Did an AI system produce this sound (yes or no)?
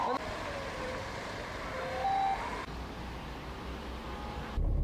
no